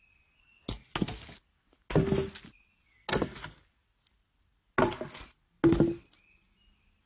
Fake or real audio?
real